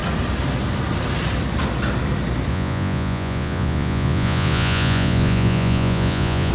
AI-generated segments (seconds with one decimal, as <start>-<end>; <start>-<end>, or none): 2.5-6.5